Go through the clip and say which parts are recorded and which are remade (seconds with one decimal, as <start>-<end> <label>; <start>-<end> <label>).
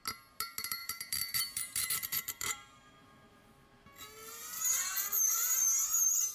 0.0-0.8 recorded; 0.8-2.9 remade; 2.9-4.4 recorded; 4.4-5.6 remade; 5.6-6.3 recorded